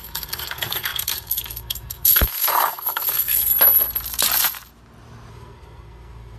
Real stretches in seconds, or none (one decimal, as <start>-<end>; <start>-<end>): 3.5-5.3